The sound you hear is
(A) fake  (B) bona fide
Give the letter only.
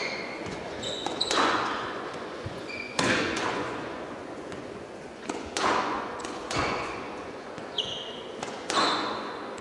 A